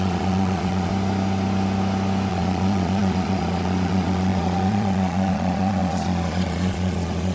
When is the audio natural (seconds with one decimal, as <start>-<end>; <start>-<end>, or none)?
0.9-2.3